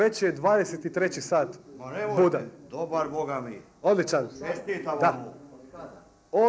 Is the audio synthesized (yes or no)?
no